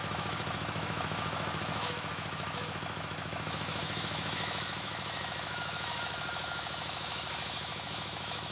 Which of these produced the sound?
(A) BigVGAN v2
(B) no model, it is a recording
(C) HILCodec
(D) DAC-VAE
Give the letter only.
D